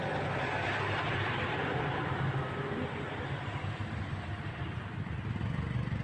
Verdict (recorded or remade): recorded